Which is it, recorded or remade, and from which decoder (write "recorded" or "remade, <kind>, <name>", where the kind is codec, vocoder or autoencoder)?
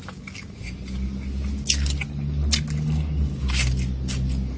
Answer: recorded